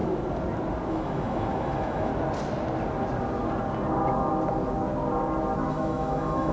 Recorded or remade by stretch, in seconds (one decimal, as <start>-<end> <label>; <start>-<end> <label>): 0.0-0.9 recorded; 0.9-2.1 remade; 2.1-5.7 recorded; 5.7-6.5 remade